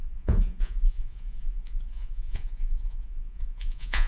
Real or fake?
fake